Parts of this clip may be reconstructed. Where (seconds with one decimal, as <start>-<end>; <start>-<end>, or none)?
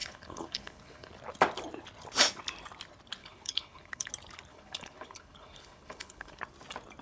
0.0-1.1; 3.2-4.1; 4.5-6.4